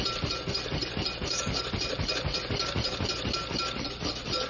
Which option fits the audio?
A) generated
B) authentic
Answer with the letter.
B